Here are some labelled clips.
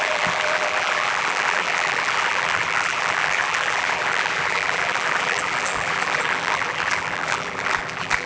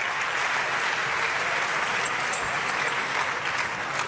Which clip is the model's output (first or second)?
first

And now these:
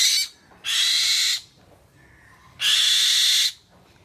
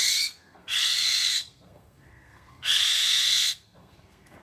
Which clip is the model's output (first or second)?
second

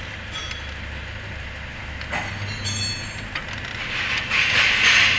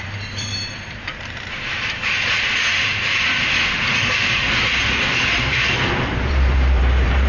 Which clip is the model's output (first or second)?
second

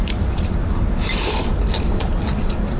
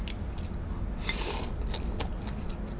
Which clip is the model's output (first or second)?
first